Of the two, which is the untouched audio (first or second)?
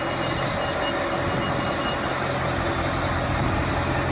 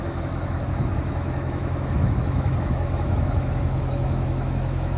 first